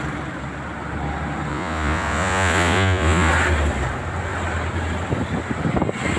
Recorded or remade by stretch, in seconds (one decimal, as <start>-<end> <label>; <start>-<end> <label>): 0.0-1.5 recorded; 1.5-3.3 remade; 3.3-6.2 recorded